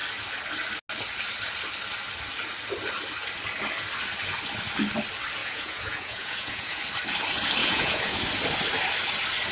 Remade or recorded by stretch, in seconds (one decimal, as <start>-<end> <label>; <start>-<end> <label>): 0.0-5.4 recorded; 5.4-6.8 remade; 6.8-7.6 recorded; 7.6-8.2 remade; 8.2-9.5 recorded